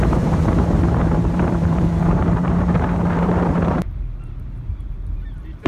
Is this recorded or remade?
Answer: remade